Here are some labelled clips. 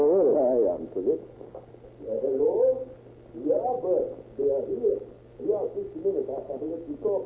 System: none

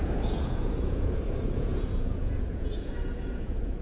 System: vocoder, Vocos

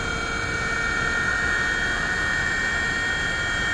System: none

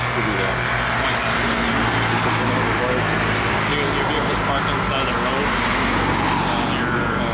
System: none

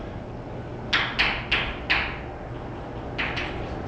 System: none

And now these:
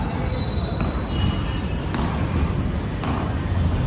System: none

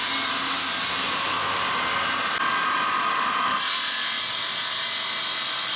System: none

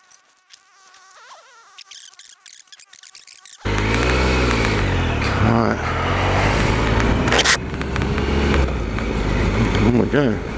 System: none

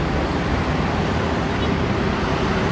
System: none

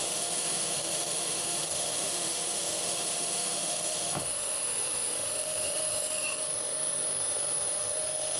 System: autoencoder, DAC-VAE